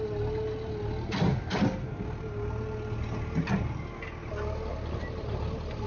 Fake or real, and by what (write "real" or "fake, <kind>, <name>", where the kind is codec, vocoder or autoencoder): real